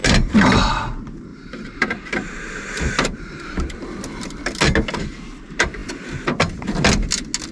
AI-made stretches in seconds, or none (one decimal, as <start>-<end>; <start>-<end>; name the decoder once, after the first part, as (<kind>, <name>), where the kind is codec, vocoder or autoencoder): 1.3-3.4 (vocoder, BigVGAN v2)